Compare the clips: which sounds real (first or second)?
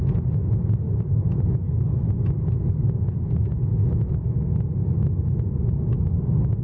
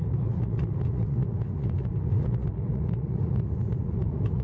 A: first